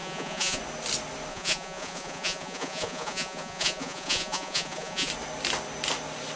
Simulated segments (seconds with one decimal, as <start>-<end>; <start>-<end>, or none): 0.0-0.6; 1.3-5.1